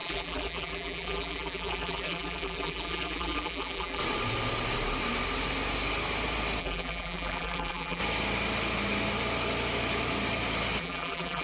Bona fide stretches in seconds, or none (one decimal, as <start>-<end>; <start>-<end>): 4.0-6.6; 8.0-10.8